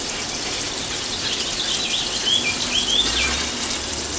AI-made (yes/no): no